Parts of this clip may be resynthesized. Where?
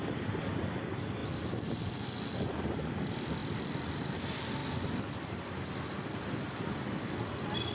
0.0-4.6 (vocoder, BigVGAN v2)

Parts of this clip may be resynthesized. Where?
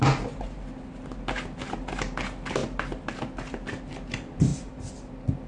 4.5-5.5 (vocoder, BigVGAN v2)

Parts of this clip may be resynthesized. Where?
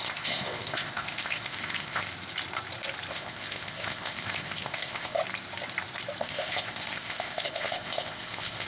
0.0-2.1 (codec, ZipCodec); 3.1-5.2; 6.2-8.7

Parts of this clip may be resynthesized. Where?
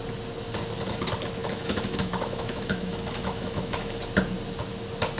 1.4-4.0 (autoencoder, DAC-VAE)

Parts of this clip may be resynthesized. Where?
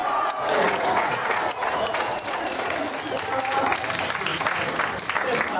0.0-2.9 (vocoder, Vocos); 4.3-4.8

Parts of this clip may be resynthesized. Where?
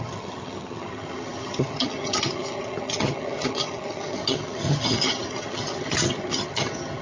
0.0-7.0 (vocoder, HiFi-GAN)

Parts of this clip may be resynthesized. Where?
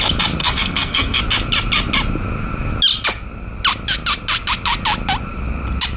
0.4-1.2 (codec, SNAC)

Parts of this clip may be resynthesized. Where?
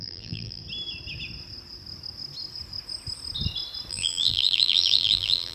0.0-0.6 (vocoder, BigVGAN v2); 3.9-5.5